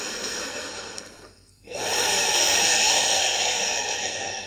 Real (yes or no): no